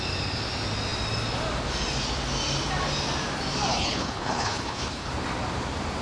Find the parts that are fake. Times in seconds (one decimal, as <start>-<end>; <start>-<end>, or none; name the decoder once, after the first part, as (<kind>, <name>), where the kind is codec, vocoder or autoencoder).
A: 3.7-5.1 (codec, HILCodec)